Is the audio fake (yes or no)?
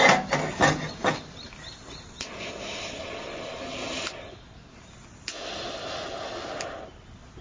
no